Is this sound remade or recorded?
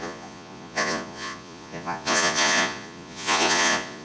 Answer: remade